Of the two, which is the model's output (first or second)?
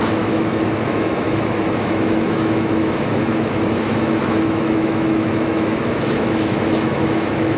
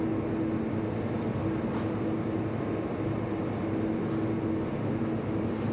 first